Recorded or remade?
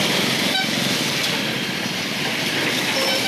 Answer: recorded